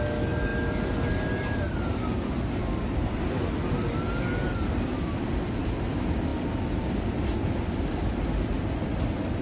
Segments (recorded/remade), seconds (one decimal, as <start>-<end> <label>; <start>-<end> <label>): 0.0-9.4 recorded